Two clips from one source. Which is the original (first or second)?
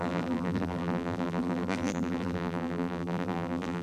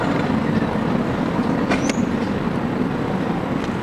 second